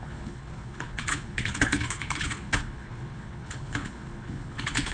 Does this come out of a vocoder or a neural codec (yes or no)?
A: yes